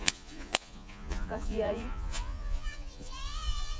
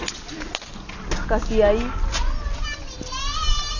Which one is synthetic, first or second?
first